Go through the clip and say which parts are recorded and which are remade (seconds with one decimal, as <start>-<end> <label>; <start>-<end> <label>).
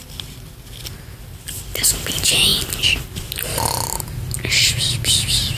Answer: 0.0-5.6 recorded